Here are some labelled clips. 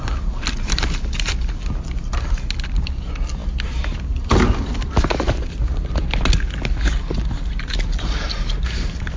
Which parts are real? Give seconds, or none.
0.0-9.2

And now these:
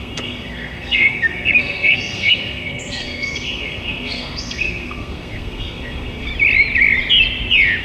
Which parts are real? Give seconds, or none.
6.3-7.8

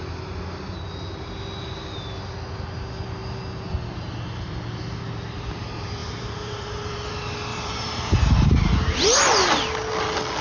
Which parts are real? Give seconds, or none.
0.0-6.0; 7.1-7.5; 8.3-10.4

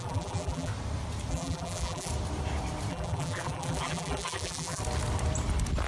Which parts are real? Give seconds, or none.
0.7-1.3; 2.1-2.9; 4.8-5.9

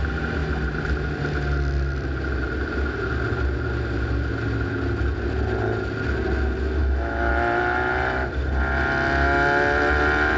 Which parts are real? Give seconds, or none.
0.0-6.8; 7.3-10.4

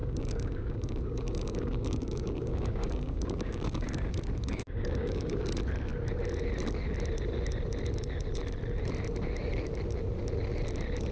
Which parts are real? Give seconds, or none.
4.1-4.5; 5.4-11.1